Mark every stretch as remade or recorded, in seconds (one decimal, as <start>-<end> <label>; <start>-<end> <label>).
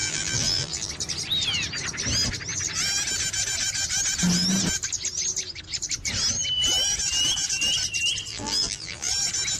0.0-0.9 remade; 0.9-8.3 recorded; 8.3-9.1 remade; 9.1-9.6 recorded